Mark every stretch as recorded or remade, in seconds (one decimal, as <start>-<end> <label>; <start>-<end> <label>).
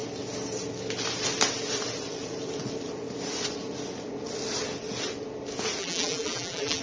0.0-5.8 recorded; 5.8-6.8 remade